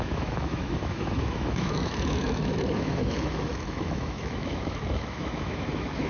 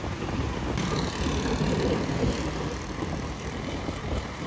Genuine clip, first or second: second